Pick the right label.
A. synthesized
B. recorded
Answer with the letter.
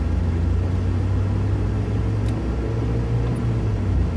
B